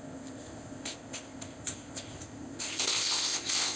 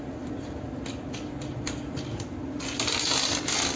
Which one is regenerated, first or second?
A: first